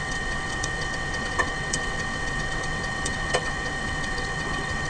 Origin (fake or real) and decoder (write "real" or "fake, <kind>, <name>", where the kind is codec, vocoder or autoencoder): fake, vocoder, WaveNeXt